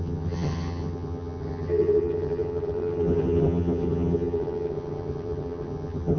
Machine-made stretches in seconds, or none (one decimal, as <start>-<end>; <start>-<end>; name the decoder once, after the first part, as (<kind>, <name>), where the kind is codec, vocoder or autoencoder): 0.0-6.2 (vocoder, HiFi-GAN)